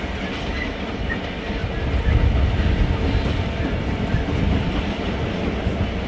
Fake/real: real